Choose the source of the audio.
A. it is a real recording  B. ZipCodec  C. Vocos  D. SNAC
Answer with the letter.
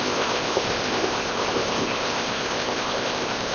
B